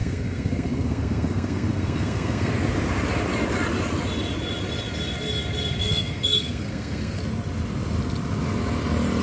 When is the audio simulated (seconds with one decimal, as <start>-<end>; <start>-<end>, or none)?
0.0-2.5; 5.8-7.2